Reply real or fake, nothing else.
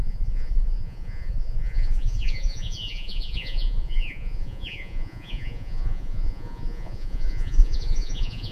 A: fake